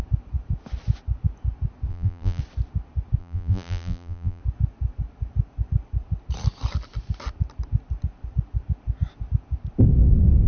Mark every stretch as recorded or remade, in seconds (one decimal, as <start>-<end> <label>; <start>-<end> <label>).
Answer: 0.0-1.9 recorded; 1.9-2.4 remade; 2.4-3.2 recorded; 3.2-4.4 remade; 4.4-10.5 recorded